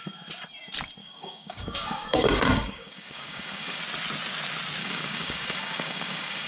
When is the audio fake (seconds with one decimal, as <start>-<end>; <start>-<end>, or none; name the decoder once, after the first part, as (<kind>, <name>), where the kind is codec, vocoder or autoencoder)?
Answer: 1.0-3.8 (codec, DAC); 4.8-6.5